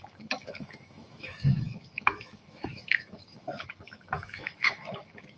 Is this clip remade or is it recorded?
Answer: remade